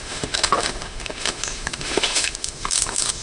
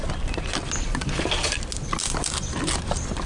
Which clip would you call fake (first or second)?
first